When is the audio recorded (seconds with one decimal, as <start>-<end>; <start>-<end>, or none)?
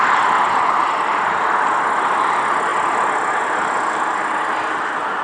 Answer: 0.0-5.2